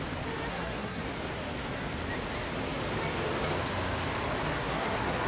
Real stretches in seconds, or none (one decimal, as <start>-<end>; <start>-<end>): 0.0-0.5; 1.0-4.5